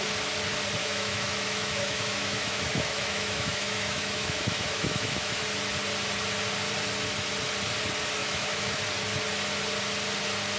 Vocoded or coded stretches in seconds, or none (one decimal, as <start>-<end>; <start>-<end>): 0.8-5.4; 8.2-8.8